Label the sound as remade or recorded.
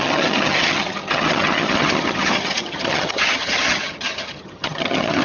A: remade